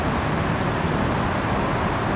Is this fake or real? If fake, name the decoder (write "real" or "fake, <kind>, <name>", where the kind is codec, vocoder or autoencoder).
real